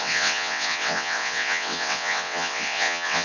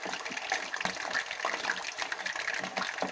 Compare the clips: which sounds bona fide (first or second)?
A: second